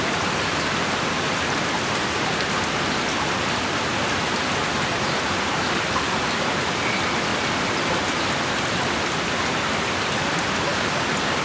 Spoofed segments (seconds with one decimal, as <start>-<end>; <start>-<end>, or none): none